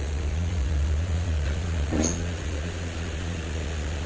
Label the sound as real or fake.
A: fake